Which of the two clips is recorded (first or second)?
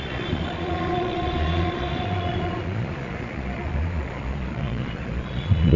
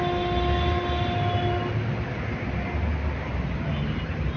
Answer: second